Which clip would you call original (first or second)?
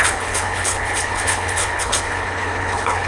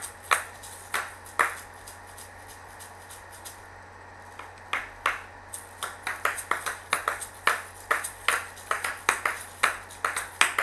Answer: second